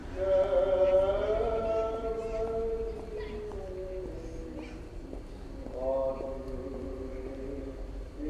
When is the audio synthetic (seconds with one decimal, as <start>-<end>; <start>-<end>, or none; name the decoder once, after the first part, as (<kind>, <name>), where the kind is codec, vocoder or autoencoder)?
none

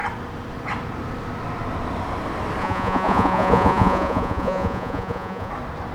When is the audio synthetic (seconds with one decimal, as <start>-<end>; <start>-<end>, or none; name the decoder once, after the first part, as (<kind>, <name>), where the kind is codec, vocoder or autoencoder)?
2.6-5.5 (vocoder, Vocos)

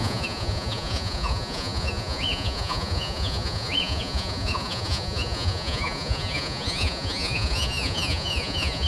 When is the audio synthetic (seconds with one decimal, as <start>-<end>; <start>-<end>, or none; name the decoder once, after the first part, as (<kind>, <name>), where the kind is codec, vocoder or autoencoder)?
0.0-8.9 (vocoder, Vocos)

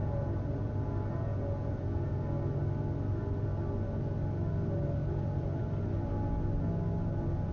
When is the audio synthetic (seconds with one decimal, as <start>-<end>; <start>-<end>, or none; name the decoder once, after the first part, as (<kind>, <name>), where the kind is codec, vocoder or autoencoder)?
0.0-0.7 (vocoder, Vocos); 1.1-2.2; 5.0-5.6

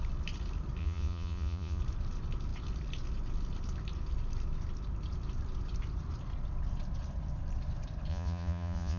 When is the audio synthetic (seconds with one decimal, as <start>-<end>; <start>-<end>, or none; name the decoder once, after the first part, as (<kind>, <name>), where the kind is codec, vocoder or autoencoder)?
0.8-1.8 (vocoder, Vocos); 8.1-9.0

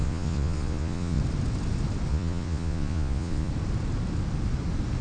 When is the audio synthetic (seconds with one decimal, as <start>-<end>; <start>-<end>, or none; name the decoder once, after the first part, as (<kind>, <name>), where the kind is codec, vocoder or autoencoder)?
0.0-1.2 (vocoder, Vocos); 2.1-3.5

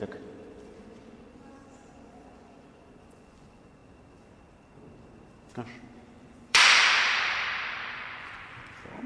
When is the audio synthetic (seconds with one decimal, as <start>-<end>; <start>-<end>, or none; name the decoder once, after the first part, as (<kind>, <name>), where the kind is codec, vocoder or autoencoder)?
0.0-3.8 (vocoder, Vocos); 5.7-6.8; 7.9-9.1